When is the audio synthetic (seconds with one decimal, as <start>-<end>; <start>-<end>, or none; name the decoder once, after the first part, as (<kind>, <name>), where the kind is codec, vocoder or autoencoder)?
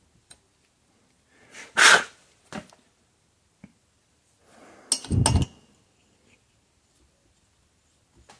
none